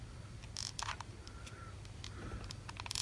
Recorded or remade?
recorded